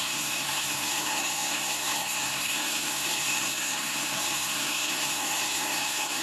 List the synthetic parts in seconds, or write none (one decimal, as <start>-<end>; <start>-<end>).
0.0-6.2

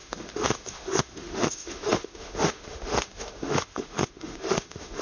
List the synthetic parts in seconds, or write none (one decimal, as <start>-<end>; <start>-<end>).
0.0-5.0

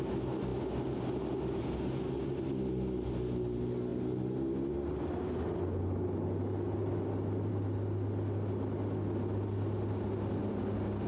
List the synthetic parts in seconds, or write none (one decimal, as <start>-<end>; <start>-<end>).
none

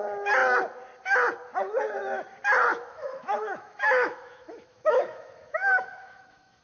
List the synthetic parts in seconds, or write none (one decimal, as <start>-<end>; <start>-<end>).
2.7-6.6